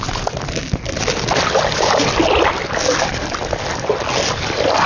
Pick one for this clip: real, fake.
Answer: real